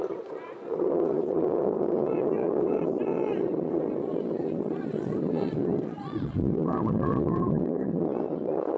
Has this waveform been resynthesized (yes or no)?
yes